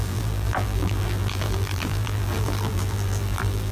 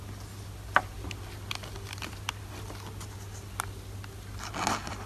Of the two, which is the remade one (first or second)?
first